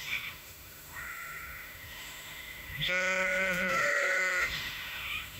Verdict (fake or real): fake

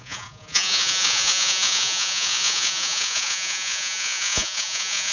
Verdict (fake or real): fake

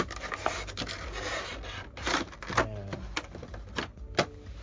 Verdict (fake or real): real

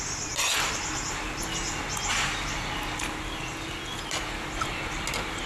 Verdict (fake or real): real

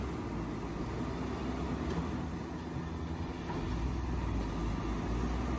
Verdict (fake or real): real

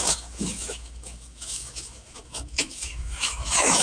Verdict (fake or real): fake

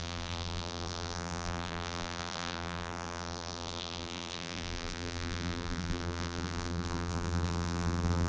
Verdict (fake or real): fake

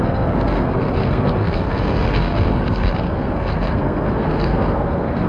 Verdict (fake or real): fake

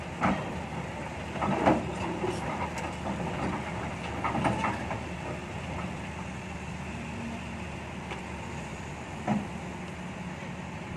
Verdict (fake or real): real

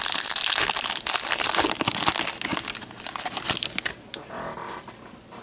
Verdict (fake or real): real